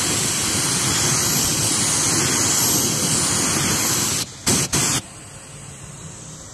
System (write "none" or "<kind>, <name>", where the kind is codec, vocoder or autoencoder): none